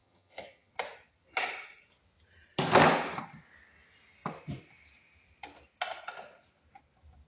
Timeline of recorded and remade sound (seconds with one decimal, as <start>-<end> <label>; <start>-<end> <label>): 0.0-0.7 remade; 0.7-7.3 recorded